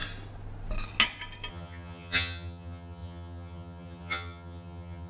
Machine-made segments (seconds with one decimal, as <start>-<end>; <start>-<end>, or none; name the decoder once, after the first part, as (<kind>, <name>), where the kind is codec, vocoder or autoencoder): 1.5-5.1 (vocoder, HiFi-GAN)